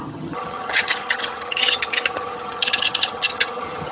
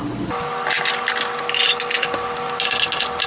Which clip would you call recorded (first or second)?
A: second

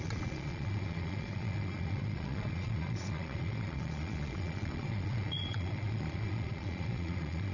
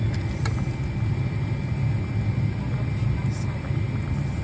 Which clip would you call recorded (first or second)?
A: second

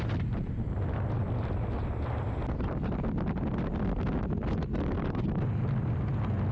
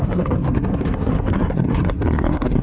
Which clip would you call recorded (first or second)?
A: first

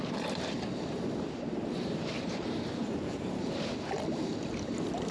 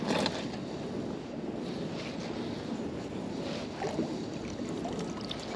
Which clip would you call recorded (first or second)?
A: second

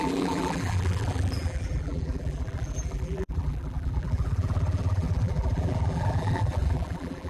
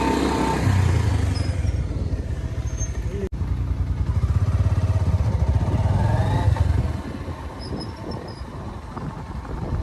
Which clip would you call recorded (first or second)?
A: second